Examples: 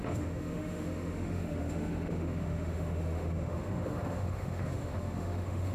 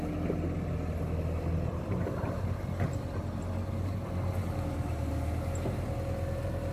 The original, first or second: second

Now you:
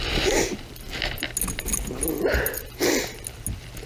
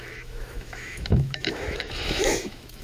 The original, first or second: first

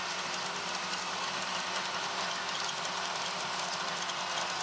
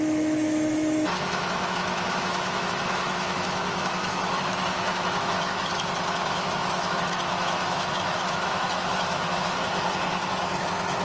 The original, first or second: first